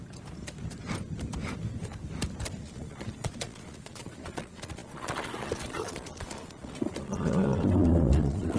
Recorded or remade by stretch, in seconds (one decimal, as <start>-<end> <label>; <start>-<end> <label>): 0.0-2.6 recorded; 2.6-8.6 remade